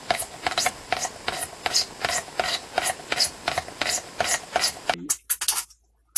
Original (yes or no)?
yes